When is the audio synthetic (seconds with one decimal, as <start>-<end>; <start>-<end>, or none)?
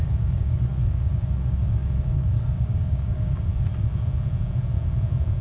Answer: 0.0-3.5